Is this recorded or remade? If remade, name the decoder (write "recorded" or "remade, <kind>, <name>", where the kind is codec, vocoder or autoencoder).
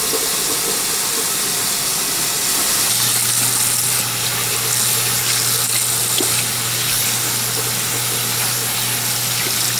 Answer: recorded